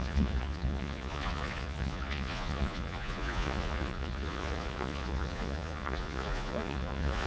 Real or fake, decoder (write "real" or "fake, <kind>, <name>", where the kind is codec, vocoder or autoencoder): fake, vocoder, Vocos